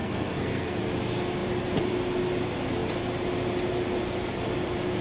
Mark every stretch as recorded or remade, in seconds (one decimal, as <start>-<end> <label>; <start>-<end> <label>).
0.0-0.8 remade; 0.8-5.0 recorded